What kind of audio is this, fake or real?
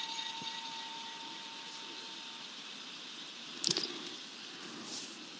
fake